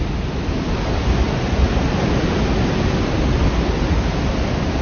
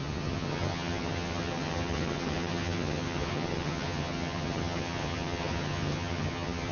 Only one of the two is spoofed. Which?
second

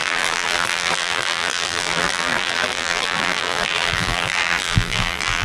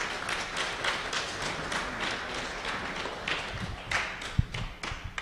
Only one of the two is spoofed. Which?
first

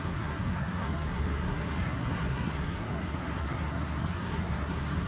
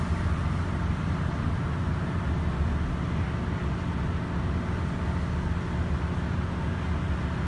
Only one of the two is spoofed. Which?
first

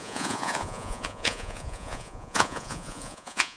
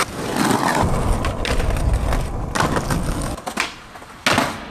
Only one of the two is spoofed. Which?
first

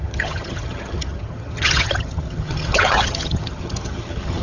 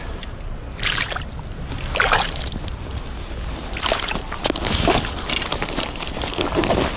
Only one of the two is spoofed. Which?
first